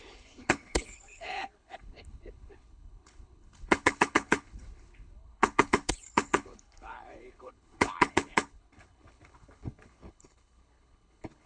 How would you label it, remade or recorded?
remade